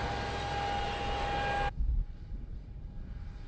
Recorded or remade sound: recorded